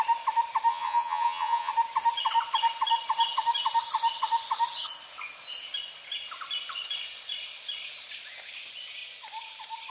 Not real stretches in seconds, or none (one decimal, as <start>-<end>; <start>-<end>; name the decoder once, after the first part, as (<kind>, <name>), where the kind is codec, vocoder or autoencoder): 0.7-1.7 (vocoder, HiFi-GAN)